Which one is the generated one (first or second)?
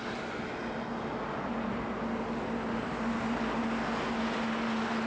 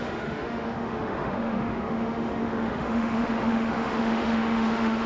second